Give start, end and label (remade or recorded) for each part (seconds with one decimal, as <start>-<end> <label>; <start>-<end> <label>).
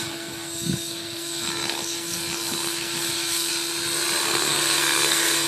0.0-3.5 remade; 3.5-4.2 recorded; 4.2-5.5 remade